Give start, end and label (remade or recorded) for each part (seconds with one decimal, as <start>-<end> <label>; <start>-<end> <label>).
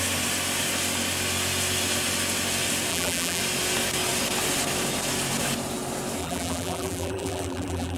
0.0-2.9 recorded; 2.9-3.4 remade; 3.4-6.2 recorded; 6.2-8.0 remade